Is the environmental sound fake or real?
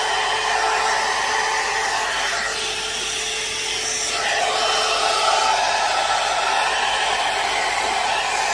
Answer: real